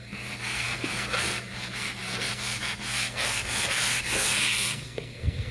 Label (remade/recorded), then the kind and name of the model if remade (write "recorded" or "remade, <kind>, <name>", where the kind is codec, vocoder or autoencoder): remade, codec, SNAC